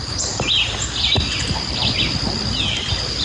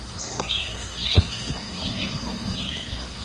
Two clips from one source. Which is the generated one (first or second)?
second